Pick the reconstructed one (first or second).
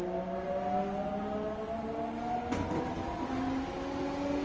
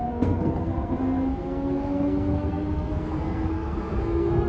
second